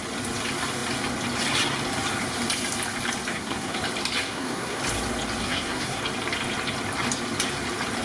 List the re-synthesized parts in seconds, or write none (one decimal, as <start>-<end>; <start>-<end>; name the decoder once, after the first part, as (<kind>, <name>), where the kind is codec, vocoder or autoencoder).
3.3-3.8 (codec, SNAC); 4.2-4.8; 5.4-6.0